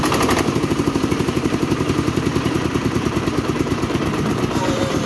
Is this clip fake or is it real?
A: fake